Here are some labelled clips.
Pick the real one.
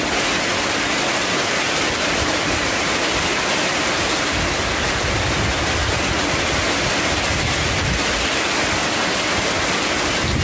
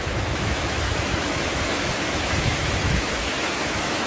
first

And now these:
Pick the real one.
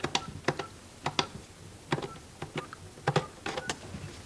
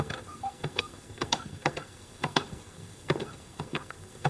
first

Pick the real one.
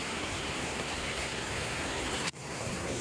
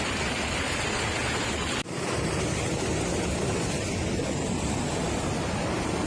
second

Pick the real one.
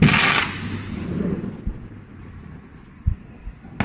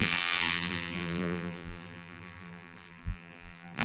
first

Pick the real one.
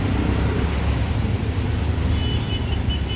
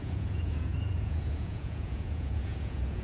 first